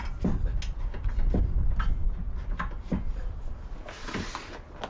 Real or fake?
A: real